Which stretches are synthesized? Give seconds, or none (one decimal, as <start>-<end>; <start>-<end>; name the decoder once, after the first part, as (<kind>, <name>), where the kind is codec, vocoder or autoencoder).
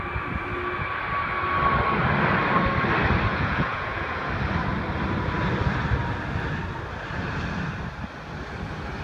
3.3-4.3 (vocoder, Vocos)